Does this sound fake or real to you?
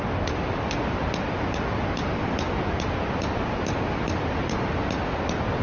real